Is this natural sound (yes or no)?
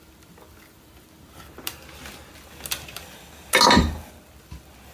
yes